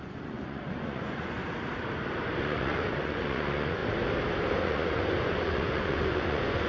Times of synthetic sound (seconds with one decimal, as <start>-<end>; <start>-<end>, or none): 0.0-1.4; 2.4-3.8; 4.6-6.7